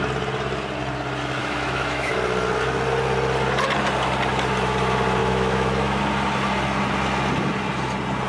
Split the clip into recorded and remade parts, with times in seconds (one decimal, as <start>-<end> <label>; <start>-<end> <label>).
0.0-1.4 recorded; 1.4-2.1 remade; 2.1-5.2 recorded; 5.2-6.0 remade; 6.0-8.3 recorded